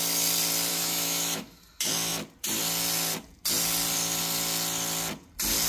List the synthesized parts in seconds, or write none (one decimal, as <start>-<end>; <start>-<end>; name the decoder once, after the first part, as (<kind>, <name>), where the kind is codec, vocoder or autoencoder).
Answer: 0.7-1.6 (autoencoder, DAC-VAE)